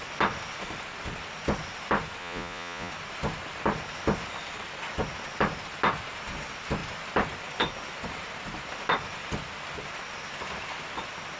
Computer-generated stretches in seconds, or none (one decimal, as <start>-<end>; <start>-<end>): 2.2-2.9